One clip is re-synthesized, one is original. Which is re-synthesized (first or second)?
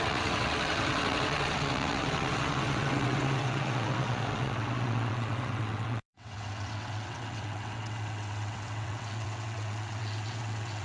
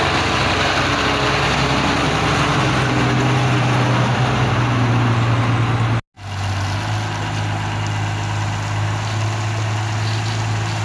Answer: first